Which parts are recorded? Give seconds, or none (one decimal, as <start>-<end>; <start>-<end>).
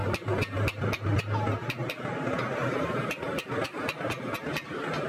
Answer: 0.0-5.1